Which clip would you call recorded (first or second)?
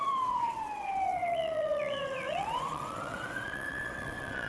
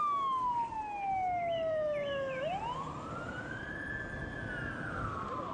second